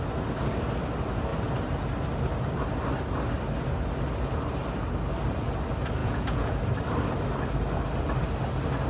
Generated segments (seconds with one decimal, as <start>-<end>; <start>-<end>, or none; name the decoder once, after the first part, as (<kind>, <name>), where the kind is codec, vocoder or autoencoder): 6.0-6.6 (vocoder, Vocos)